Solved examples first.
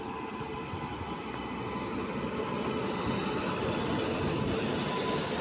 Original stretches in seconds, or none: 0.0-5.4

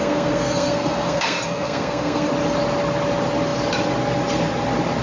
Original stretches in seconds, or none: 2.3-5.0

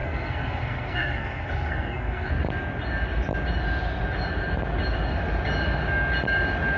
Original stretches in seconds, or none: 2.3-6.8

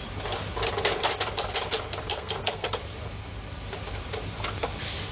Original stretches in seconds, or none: 0.0-2.1; 2.8-5.1

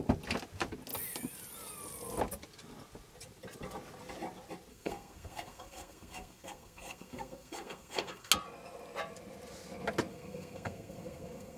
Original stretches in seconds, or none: 0.0-4.7; 8.3-10.1

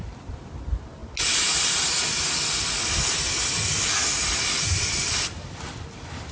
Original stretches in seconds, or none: 0.0-6.3

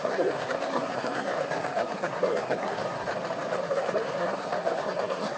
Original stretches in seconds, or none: 3.1-3.6

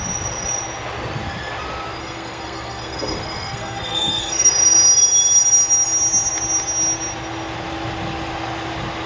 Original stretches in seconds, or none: 0.0-2.0; 4.5-9.1